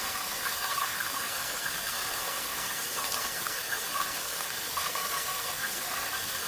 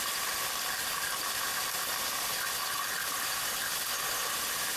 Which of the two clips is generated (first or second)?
first